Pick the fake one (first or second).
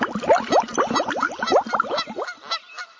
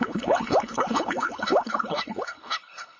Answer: second